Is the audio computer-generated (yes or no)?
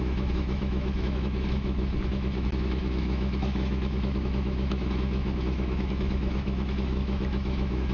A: yes